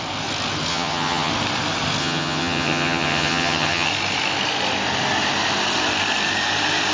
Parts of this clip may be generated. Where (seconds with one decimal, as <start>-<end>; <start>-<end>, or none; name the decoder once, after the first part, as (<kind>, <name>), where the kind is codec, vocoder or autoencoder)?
0.7-1.3 (vocoder, HiFi-GAN); 2.0-3.9